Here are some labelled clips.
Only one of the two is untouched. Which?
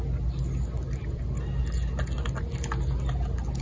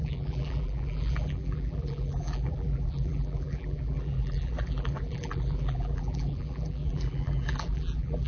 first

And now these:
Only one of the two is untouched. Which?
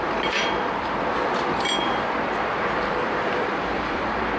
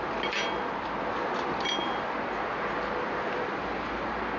second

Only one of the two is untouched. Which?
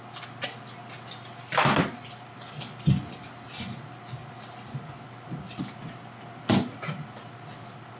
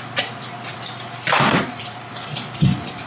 first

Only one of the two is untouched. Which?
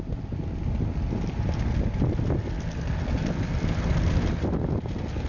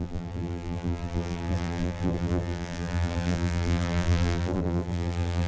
first